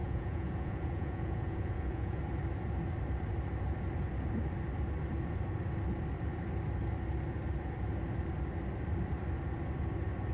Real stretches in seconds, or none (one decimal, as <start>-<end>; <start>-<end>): 2.2-10.3